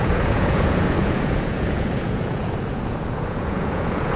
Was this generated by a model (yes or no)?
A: yes